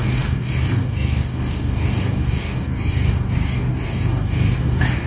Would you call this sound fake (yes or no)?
yes